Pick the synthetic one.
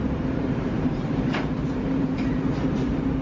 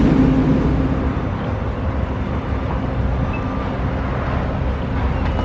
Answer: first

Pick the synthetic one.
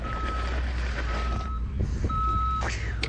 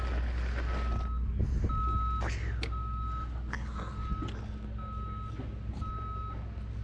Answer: first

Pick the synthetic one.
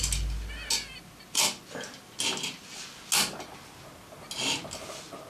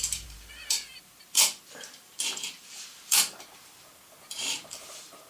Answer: second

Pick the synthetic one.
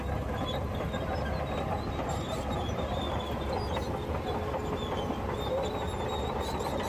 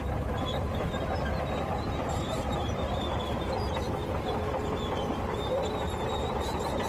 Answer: second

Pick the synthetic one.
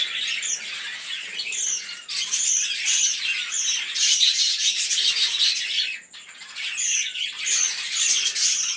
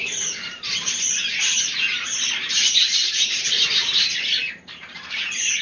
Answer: second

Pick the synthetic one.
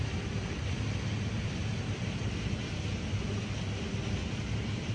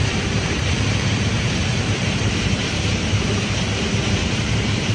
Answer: second